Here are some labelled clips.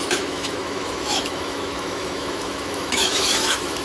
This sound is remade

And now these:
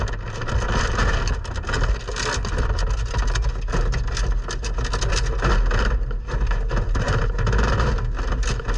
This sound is recorded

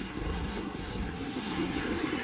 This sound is remade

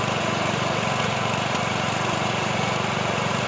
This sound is remade